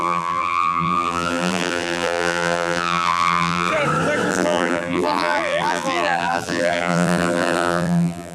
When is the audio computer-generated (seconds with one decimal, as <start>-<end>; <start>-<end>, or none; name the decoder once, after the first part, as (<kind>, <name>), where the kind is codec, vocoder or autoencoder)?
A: 0.0-3.7 (vocoder, BigVGAN v2); 4.3-8.3